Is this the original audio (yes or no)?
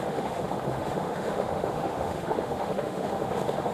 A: no